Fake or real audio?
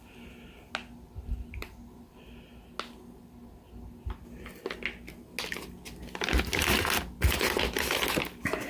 real